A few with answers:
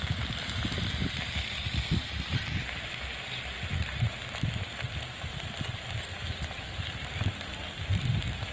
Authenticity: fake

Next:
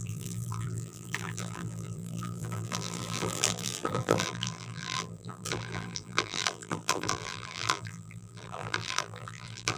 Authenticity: fake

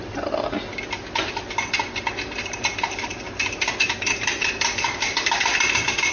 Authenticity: real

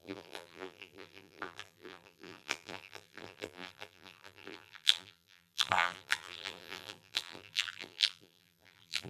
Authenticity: fake